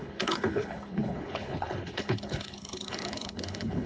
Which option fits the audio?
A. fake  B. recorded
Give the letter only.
A